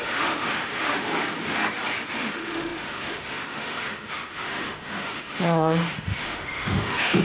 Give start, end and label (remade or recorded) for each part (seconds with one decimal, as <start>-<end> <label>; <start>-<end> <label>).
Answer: 0.0-1.1 remade; 1.1-2.1 recorded; 2.1-7.2 remade